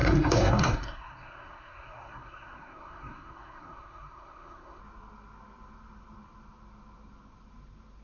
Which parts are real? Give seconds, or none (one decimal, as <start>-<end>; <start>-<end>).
4.8-8.0